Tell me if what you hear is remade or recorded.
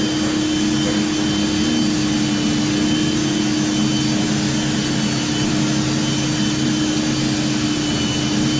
recorded